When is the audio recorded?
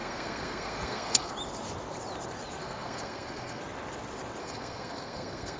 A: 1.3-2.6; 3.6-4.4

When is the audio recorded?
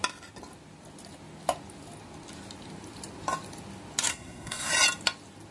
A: 0.0-4.1; 4.7-5.5